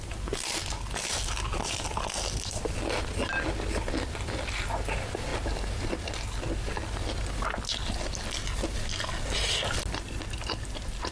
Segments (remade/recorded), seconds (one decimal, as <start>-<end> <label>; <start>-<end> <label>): 0.0-11.1 recorded

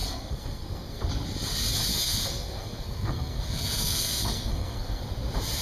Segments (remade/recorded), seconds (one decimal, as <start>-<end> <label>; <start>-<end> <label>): 0.0-1.0 remade; 1.0-1.9 recorded; 1.9-5.0 remade; 5.0-5.6 recorded

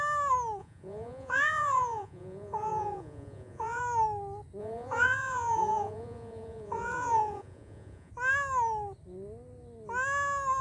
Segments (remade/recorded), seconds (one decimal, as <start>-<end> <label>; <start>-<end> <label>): 0.0-0.6 recorded; 0.6-3.8 remade; 3.8-4.6 recorded; 4.6-8.1 remade; 8.1-10.6 recorded

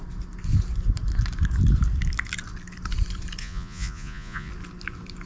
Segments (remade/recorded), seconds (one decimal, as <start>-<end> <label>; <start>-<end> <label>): 0.0-3.4 recorded; 3.4-4.5 remade; 4.5-5.3 recorded

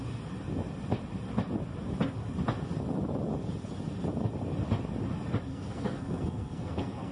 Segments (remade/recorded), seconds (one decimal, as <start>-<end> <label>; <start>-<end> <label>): 0.0-5.5 recorded; 5.5-7.1 remade